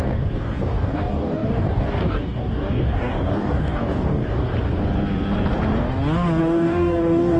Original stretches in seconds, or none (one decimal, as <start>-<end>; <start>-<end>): 4.5-6.4